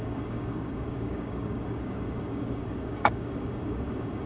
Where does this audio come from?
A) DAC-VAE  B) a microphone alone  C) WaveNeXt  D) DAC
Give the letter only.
D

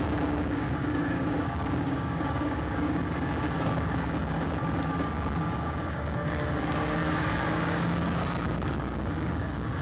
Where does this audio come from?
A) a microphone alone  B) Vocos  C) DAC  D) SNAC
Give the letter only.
C